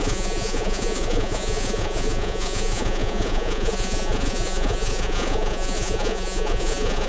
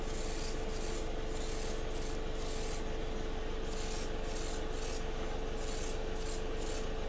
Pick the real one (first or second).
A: second